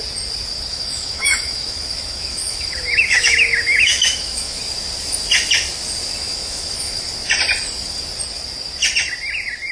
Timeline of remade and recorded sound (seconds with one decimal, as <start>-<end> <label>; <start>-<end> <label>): 0.0-0.7 recorded; 0.7-4.6 remade; 4.6-6.2 recorded; 6.2-7.0 remade; 7.0-9.7 recorded

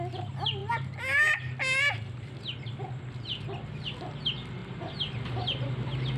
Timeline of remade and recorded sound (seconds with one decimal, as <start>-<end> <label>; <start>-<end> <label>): 0.0-6.2 recorded

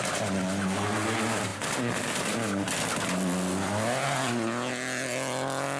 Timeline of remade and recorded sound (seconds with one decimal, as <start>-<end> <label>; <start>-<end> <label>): 0.0-5.8 recorded

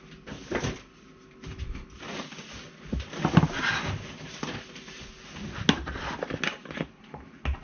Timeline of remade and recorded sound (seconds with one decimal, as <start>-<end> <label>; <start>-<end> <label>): 0.0-7.6 recorded

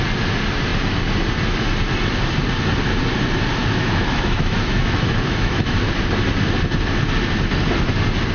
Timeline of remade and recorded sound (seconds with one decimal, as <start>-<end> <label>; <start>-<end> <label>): 0.0-3.6 recorded; 3.6-5.8 remade; 5.8-8.3 recorded